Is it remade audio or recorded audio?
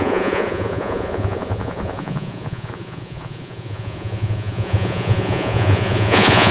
remade